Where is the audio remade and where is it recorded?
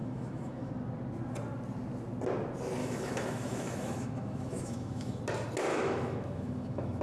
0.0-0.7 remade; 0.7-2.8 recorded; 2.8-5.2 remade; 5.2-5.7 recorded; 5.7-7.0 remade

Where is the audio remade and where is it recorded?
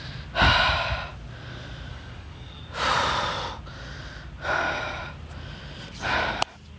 0.0-1.9 recorded; 1.9-2.6 remade; 2.6-6.8 recorded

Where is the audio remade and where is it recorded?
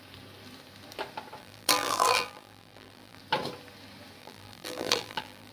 0.0-1.4 recorded; 1.4-3.2 remade; 3.2-4.2 recorded; 4.2-5.5 remade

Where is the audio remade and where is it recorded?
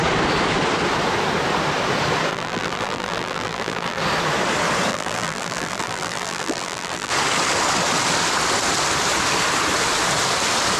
0.0-2.3 recorded; 2.3-4.0 remade; 4.0-4.9 recorded; 4.9-7.1 remade; 7.1-10.8 recorded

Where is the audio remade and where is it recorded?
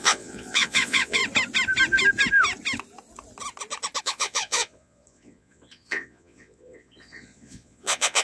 0.0-1.2 remade; 1.2-4.0 recorded; 4.0-8.2 remade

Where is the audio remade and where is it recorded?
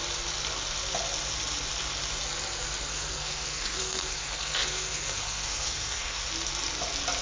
0.0-2.9 recorded; 2.9-6.2 remade; 6.2-7.2 recorded